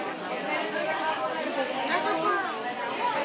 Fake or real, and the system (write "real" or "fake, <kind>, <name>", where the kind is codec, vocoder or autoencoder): real